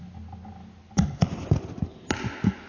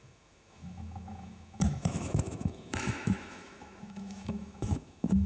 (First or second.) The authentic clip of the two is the first